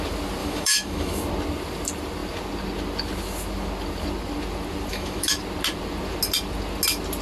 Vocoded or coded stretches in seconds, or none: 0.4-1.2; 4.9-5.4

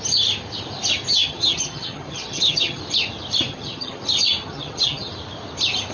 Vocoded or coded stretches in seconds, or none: 1.1-2.8; 3.5-4.0; 4.4-5.1

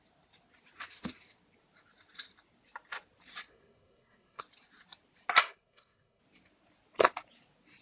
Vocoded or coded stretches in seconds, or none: 3.5-4.4; 5.4-6.2

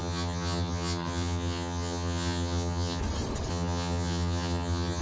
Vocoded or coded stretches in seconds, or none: 0.0-3.0; 3.5-5.0